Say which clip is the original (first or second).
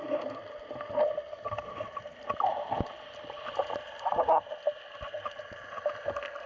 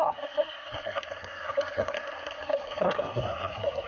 first